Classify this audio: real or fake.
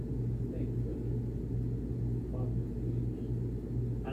real